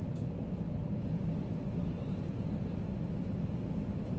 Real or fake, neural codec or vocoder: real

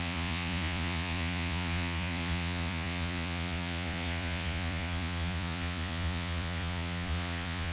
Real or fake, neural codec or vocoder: fake, vocoder, Vocos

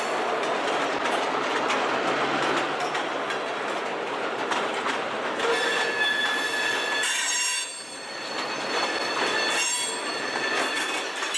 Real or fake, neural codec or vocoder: real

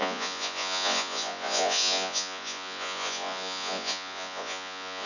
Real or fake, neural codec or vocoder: fake, vocoder, Vocos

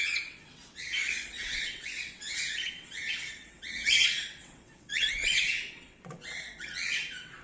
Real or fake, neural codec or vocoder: fake, vocoder, WaveNeXt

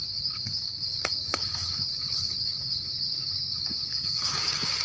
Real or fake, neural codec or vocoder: fake, codec, DAC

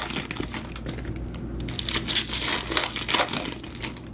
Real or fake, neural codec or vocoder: real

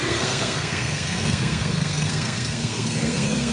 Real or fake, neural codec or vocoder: fake, codec, SNAC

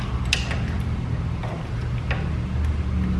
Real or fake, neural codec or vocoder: real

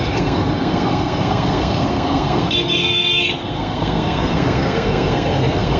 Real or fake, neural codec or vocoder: fake, codec, SNAC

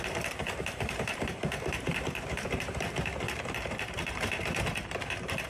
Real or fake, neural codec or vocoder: fake, vocoder, BigVGAN v2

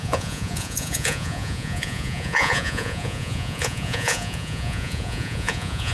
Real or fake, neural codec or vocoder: fake, vocoder, Vocos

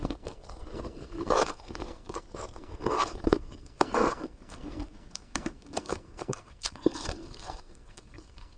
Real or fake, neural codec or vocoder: fake, codec, SNAC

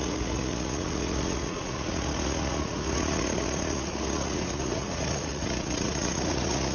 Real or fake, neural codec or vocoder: fake, vocoder, Vocos